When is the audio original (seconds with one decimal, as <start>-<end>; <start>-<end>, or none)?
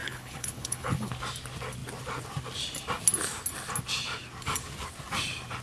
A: 1.1-5.6